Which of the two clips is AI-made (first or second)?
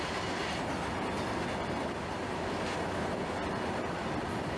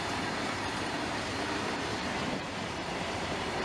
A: second